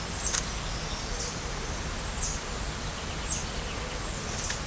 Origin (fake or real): real